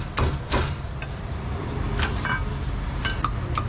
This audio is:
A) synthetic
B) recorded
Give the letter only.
B